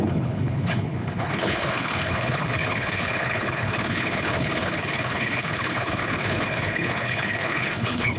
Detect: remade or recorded remade